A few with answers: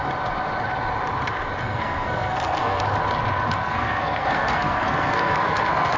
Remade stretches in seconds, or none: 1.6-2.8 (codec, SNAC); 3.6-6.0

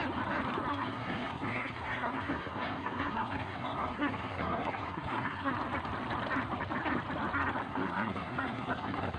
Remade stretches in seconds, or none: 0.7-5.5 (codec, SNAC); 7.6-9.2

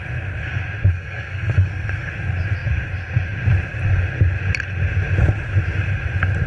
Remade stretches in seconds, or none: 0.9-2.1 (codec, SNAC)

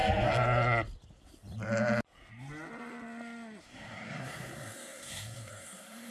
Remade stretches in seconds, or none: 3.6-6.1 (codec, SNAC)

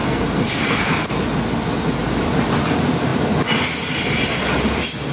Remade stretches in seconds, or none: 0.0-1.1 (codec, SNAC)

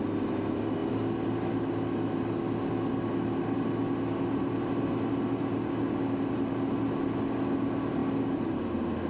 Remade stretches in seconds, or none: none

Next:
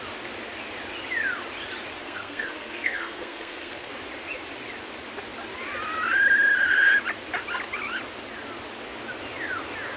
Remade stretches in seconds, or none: 2.0-3.9 (codec, SNAC)